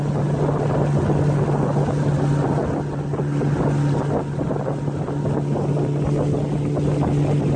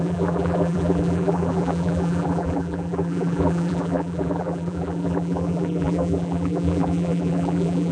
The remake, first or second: second